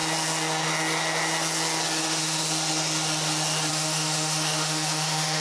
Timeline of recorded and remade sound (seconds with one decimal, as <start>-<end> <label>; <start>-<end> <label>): 0.0-2.0 recorded; 2.0-2.4 remade; 2.4-3.7 recorded; 3.7-5.4 remade